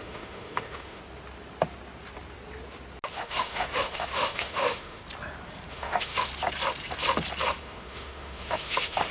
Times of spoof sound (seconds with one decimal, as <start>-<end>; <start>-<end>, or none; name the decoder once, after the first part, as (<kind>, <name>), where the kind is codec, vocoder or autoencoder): 0.0-1.0 (autoencoder, DAC-VAE); 3.1-5.0; 5.7-6.3; 7.6-9.1